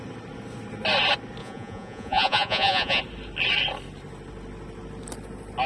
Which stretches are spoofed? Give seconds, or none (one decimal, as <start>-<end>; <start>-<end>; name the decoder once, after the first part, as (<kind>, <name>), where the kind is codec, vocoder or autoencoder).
1.4-3.0 (vocoder, Vocos)